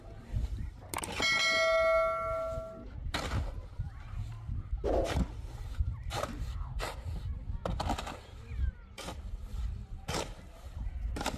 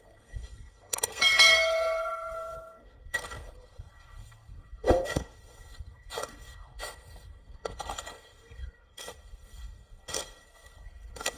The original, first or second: first